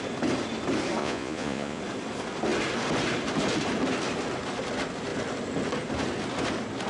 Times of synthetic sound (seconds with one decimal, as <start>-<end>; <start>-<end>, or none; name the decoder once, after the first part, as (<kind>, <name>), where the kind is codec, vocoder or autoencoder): 1.0-1.8 (vocoder, Vocos)